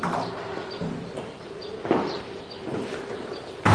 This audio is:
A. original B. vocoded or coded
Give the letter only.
A